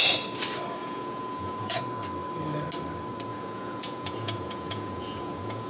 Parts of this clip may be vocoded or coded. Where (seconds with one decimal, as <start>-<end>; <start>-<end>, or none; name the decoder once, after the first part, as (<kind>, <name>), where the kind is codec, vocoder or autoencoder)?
0.8-1.8 (vocoder, Vocos); 3.3-5.7

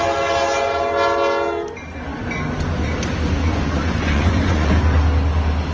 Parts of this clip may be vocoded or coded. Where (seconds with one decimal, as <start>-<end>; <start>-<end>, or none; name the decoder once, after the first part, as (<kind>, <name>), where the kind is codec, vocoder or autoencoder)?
3.4-4.7 (vocoder, Vocos)

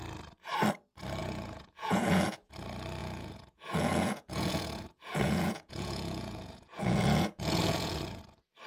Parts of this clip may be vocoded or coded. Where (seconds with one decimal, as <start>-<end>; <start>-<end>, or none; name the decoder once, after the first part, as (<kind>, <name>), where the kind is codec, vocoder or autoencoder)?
1.2-2.5 (vocoder, Vocos); 3.0-8.2

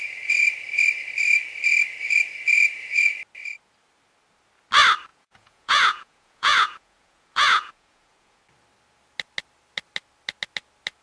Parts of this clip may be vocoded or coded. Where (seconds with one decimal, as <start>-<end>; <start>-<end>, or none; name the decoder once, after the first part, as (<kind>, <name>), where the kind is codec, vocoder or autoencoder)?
5.1-8.4 (vocoder, Vocos)

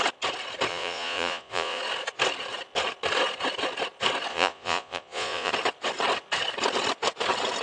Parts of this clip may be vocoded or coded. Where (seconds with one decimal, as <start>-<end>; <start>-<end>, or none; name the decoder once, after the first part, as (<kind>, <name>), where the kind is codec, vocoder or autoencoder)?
0.7-1.8 (vocoder, Vocos); 4.3-5.5

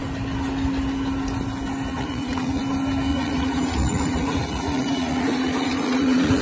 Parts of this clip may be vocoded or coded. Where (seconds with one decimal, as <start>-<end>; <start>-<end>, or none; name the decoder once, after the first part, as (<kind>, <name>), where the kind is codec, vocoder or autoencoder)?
1.9-2.6 (vocoder, Vocos); 3.1-6.4

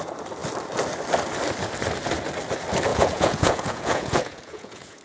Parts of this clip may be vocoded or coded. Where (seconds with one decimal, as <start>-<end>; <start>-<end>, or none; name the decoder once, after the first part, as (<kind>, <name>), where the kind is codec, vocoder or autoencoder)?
2.9-5.0 (vocoder, Vocos)